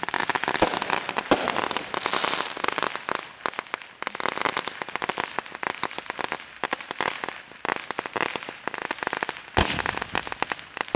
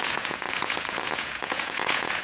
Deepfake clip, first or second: second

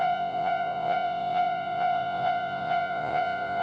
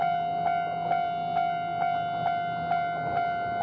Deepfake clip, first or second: first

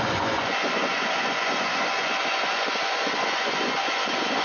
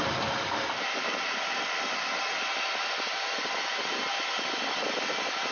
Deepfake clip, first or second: first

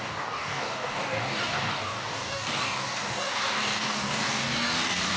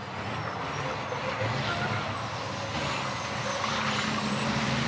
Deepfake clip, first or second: first